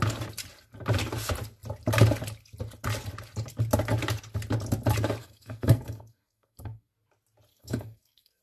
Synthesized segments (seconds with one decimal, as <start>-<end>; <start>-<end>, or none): 5.2-6.9; 7.5-8.4